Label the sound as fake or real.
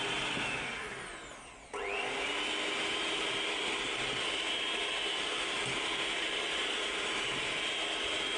real